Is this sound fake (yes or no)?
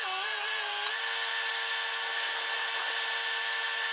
no